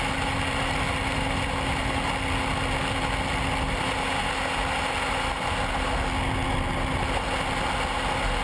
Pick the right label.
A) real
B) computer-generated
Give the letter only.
A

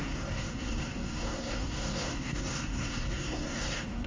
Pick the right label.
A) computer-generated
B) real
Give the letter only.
A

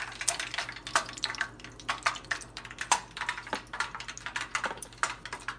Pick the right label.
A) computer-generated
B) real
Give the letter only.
B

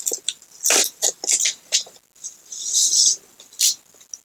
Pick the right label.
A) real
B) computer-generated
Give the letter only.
A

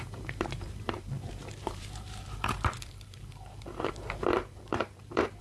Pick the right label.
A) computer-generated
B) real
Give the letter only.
A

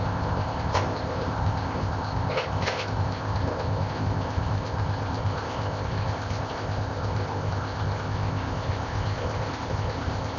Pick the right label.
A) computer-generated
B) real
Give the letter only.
A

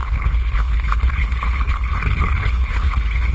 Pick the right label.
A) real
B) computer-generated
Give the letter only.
B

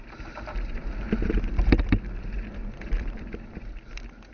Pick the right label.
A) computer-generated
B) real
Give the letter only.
B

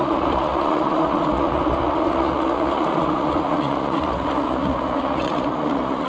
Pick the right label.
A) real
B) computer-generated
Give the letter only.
B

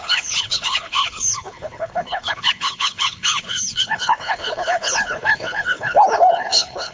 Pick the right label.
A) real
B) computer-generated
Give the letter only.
B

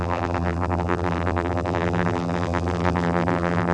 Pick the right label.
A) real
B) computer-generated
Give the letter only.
B